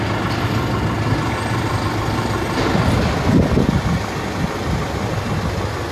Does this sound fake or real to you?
real